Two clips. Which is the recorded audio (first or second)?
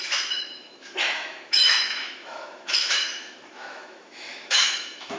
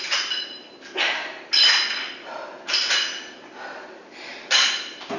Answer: second